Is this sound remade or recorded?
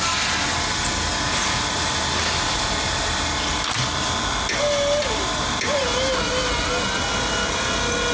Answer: recorded